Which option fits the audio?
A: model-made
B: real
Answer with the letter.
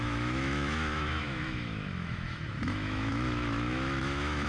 A